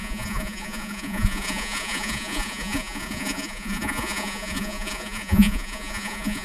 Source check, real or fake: fake